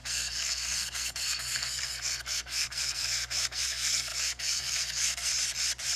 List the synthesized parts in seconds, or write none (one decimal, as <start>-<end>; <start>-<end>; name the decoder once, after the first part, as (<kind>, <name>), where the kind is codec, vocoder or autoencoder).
0.0-5.3 (codec, SNAC)